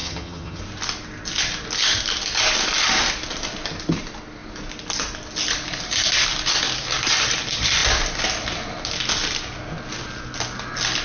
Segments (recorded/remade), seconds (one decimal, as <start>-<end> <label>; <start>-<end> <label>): 0.0-0.6 remade; 0.6-11.0 recorded